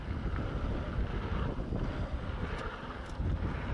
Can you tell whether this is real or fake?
real